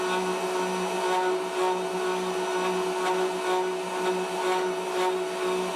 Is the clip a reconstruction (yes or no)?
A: no